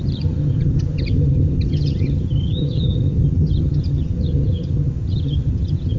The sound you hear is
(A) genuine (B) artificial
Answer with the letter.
B